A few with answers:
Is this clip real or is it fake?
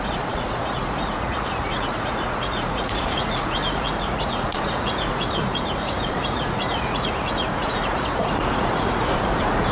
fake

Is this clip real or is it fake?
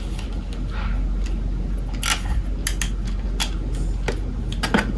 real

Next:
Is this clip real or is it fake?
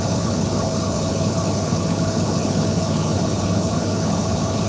fake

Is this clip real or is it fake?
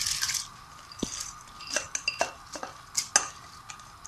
real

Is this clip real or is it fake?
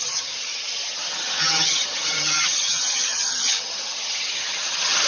fake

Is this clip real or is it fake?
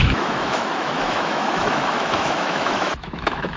fake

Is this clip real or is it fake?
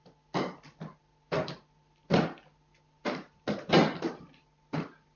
real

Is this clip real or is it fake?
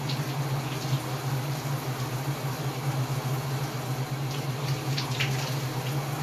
real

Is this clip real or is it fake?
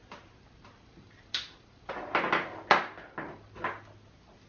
real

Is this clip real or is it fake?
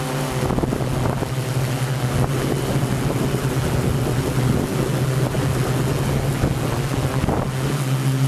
real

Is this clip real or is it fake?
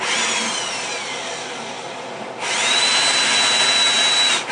real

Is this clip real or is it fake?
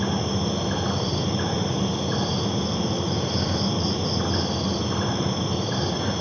real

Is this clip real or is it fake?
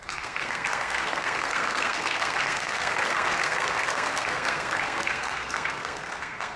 fake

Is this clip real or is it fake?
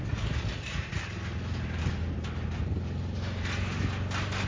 real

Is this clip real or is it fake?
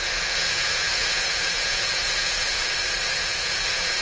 fake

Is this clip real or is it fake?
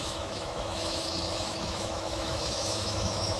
fake